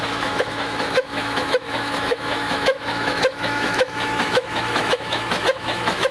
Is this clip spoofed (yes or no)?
yes